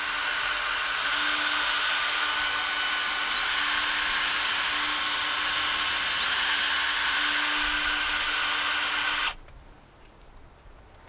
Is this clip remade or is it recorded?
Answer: recorded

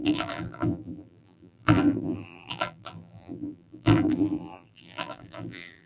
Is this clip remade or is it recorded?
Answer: remade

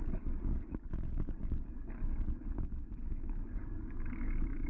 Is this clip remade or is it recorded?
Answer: remade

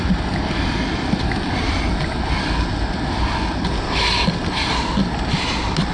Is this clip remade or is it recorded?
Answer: recorded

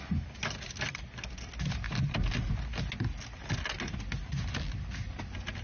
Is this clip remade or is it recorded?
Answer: recorded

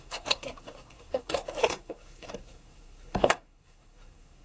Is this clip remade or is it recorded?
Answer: remade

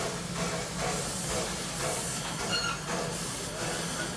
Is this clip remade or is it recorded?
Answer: recorded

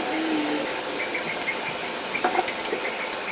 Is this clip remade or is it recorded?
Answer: recorded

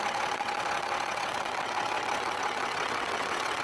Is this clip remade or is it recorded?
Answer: remade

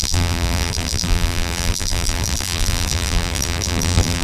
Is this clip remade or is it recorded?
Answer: remade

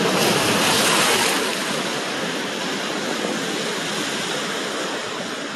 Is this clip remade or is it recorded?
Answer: recorded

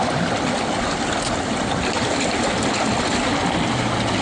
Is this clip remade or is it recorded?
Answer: recorded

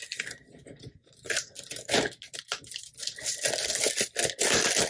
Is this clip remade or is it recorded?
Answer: recorded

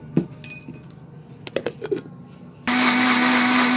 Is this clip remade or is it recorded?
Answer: recorded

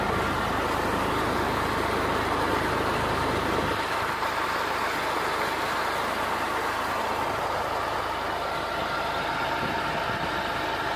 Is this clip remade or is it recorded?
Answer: recorded